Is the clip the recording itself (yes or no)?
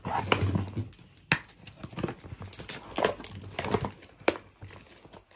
yes